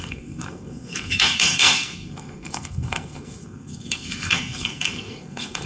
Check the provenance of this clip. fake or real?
fake